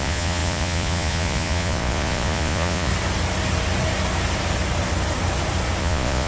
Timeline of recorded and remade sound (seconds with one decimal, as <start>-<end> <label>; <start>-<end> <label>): 0.0-2.9 remade; 2.9-5.8 recorded; 5.8-6.3 remade